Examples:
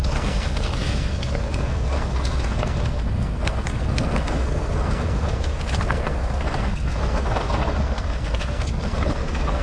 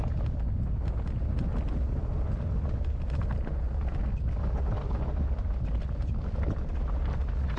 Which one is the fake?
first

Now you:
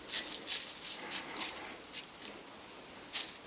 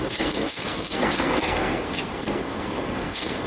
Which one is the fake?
second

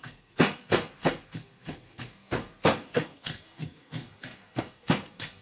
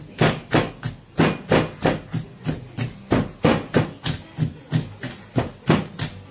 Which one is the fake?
first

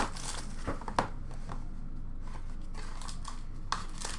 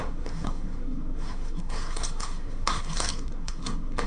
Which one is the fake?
second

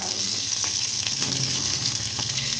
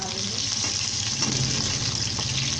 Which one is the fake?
first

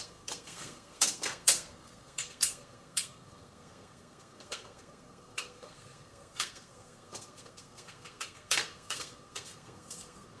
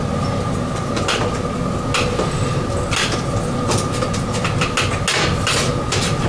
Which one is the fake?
first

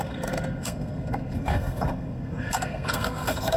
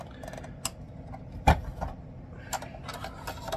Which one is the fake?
first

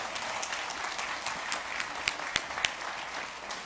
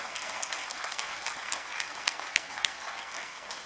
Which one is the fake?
second